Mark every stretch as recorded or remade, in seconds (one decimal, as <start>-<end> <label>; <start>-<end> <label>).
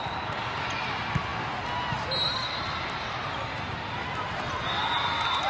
0.0-5.5 recorded